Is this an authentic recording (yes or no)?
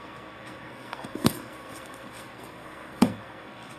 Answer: no